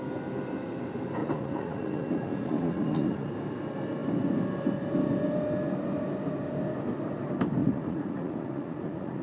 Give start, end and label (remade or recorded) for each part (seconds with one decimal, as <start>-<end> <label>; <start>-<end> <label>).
0.0-1.2 recorded; 1.2-3.3 remade; 3.3-7.6 recorded; 7.6-9.2 remade